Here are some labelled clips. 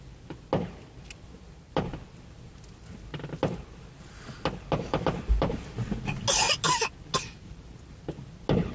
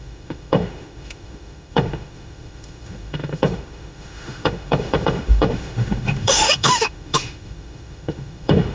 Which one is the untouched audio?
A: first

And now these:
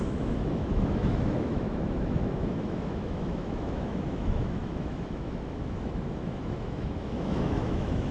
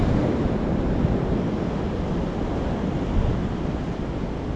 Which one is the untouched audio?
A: second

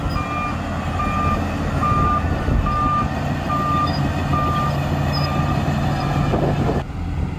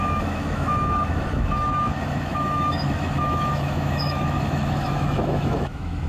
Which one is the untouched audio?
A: first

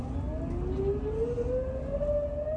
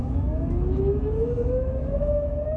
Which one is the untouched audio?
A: first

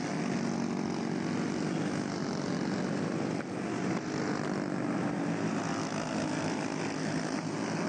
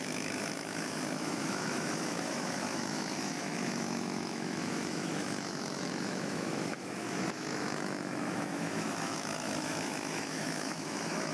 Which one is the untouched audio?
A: first